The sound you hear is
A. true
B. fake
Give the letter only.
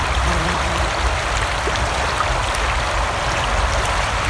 B